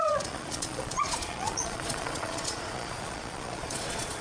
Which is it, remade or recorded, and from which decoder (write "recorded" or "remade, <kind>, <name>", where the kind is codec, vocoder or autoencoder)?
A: remade, vocoder, Vocos